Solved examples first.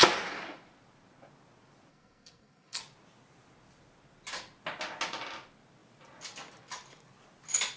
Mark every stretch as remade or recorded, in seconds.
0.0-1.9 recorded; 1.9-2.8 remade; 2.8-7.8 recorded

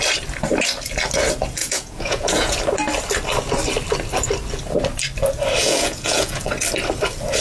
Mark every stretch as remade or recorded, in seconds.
0.0-1.6 recorded; 1.6-2.6 remade; 2.6-5.6 recorded; 5.6-6.5 remade; 6.5-7.4 recorded

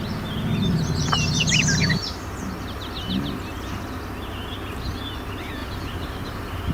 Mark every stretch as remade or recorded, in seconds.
0.0-5.6 recorded; 5.6-6.7 remade